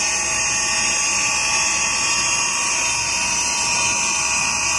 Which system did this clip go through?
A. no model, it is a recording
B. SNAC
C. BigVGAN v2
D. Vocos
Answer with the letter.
C